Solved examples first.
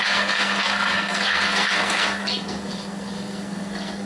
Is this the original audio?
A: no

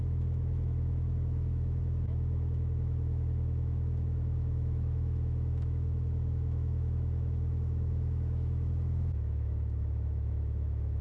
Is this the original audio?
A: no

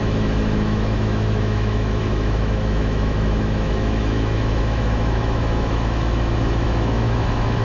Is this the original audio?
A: no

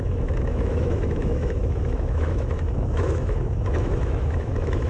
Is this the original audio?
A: no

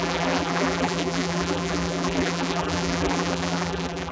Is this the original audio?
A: no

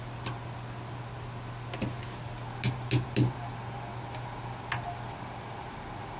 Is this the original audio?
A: yes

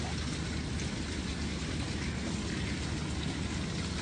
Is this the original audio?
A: yes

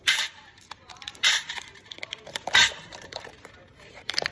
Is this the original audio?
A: no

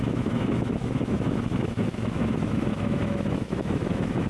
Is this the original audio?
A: no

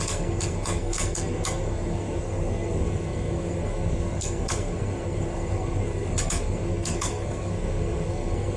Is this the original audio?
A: no